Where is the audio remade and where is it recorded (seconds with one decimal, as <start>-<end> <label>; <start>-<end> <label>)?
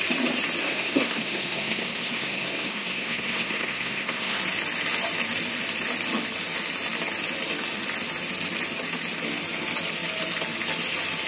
0.0-0.6 recorded; 0.6-4.4 remade; 4.4-11.3 recorded